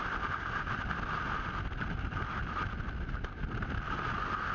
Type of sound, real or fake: real